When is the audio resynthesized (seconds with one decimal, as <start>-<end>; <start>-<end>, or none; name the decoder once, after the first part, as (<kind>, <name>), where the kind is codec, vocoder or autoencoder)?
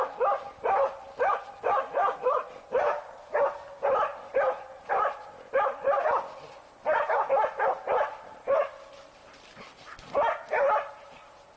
none